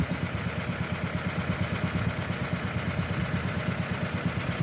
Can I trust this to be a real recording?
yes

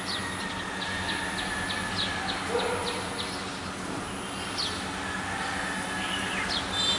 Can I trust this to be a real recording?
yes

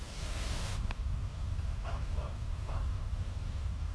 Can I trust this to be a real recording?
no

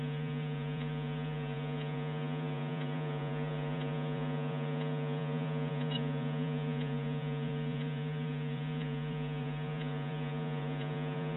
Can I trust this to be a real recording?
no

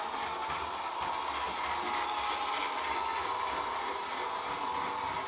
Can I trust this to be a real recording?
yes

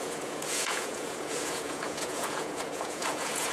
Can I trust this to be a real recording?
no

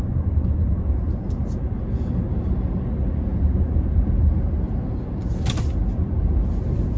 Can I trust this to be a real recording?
yes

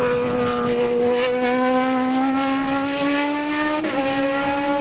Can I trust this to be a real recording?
yes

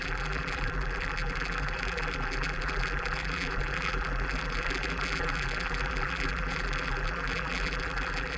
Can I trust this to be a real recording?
no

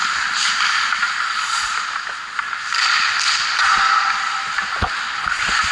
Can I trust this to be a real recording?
yes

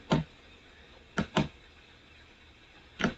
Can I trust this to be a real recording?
yes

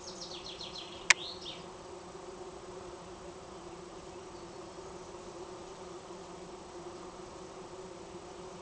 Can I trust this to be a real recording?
yes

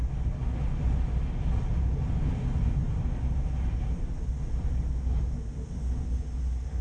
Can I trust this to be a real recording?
yes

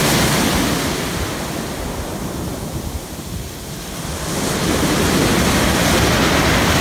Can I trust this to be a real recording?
yes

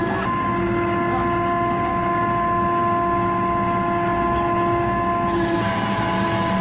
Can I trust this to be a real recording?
yes